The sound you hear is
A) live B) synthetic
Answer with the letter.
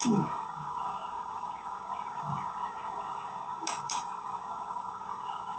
B